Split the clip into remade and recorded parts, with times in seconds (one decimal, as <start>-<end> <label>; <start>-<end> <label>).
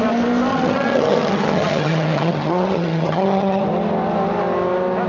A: 0.0-0.5 recorded; 0.5-3.6 remade; 3.6-5.1 recorded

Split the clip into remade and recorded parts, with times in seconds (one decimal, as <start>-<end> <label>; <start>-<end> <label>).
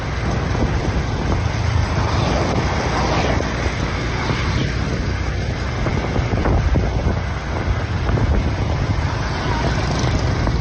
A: 0.0-10.6 recorded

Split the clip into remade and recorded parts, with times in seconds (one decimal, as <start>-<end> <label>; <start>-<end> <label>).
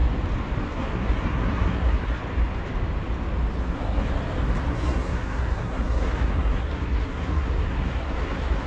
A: 0.0-0.6 recorded; 0.6-2.2 remade; 2.2-3.6 recorded; 3.6-4.1 remade; 4.1-4.7 recorded; 4.7-8.7 remade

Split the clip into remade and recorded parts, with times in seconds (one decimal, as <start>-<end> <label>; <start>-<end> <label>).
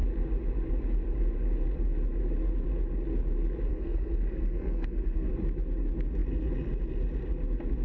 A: 0.0-3.7 recorded; 3.7-5.3 remade; 5.3-7.8 recorded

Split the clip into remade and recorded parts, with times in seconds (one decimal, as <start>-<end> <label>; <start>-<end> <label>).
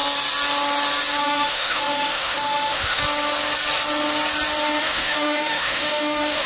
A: 0.0-1.2 recorded; 1.2-3.0 remade; 3.0-4.8 recorded; 4.8-6.5 remade